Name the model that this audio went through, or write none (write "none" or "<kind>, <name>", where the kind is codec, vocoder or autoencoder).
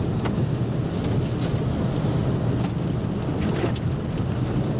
none